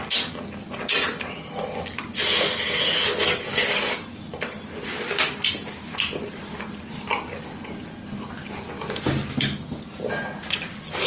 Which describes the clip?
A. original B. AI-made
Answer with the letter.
A